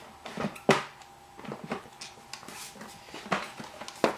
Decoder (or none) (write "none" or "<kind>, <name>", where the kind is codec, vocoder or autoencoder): none